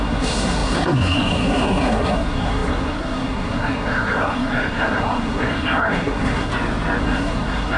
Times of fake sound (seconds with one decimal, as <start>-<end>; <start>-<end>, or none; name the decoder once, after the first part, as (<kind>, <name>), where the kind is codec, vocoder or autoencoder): 0.0-6.5 (codec, SNAC); 7.0-7.8